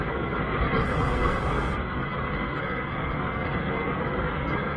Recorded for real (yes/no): no